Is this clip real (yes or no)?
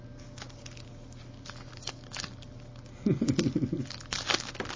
yes